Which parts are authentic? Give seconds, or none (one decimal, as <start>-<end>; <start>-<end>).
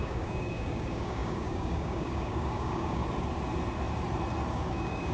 3.0-4.5